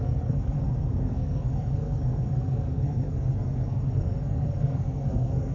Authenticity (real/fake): fake